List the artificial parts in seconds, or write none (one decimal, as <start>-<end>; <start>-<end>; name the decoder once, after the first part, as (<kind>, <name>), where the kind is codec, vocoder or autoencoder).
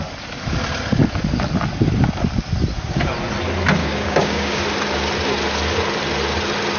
3.8-4.6 (codec, DAC)